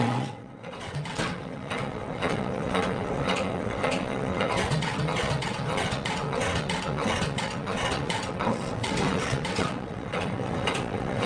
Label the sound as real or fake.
fake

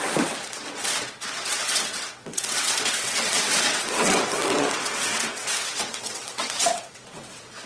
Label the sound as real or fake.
fake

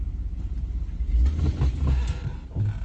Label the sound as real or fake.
real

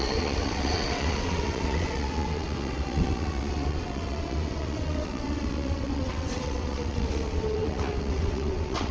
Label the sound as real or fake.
fake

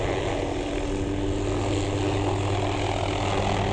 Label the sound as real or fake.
real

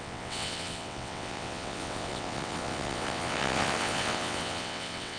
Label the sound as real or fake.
fake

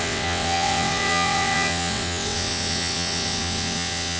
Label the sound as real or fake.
fake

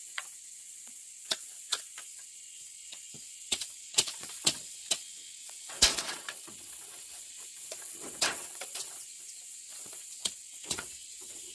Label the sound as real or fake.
fake